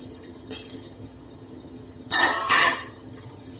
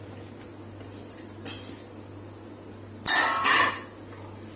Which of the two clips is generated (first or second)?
first